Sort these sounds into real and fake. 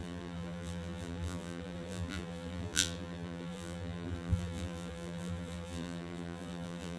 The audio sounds fake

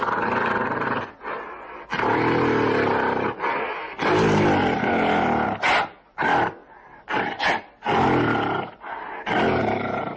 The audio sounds real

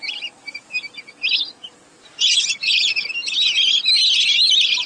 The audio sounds real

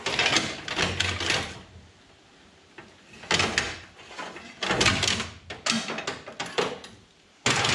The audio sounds real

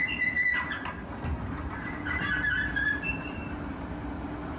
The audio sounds real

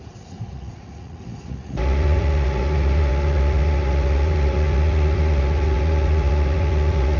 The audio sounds fake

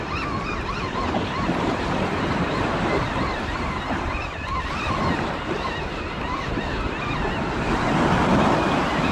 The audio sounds real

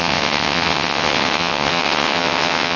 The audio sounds fake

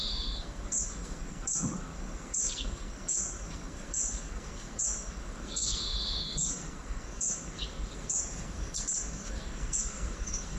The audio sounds fake